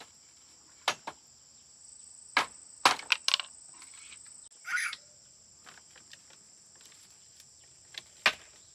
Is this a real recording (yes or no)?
yes